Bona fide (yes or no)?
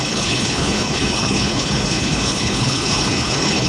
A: no